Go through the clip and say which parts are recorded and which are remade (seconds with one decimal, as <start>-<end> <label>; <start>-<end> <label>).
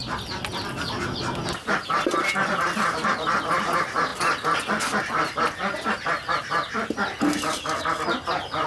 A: 0.0-8.7 recorded